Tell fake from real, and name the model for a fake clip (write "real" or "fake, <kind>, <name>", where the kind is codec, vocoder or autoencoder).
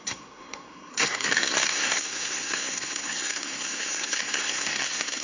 fake, codec, SNAC